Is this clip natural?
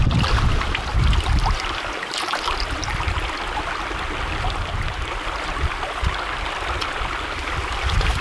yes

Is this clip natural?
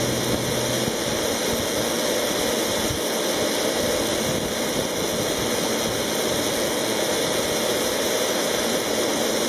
yes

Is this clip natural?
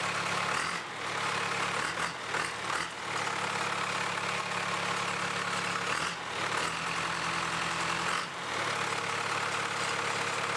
yes